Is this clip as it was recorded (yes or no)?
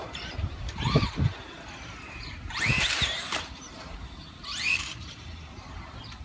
no